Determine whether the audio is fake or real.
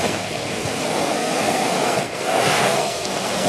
fake